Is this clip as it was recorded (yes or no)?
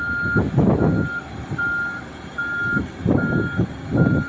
yes